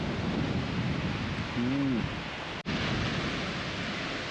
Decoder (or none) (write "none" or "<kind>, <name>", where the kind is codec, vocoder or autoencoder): none